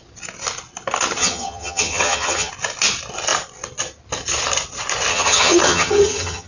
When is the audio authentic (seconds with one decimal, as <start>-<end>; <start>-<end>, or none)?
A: 0.0-1.2; 2.5-5.1